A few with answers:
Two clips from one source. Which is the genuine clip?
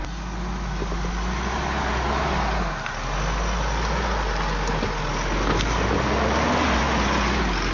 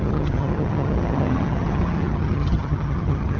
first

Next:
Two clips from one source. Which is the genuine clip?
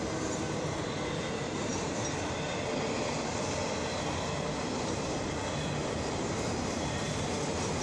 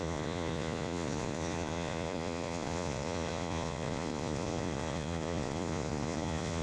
first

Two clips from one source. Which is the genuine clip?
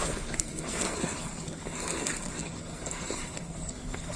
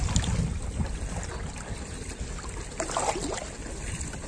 second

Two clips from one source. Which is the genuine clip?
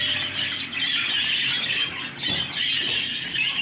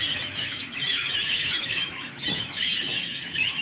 first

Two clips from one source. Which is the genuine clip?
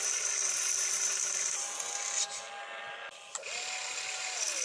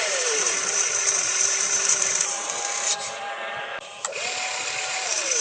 first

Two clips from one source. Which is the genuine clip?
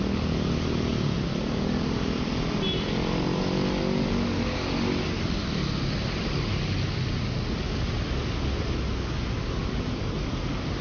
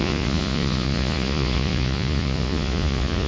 first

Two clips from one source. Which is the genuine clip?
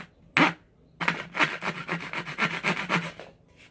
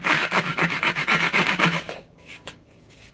first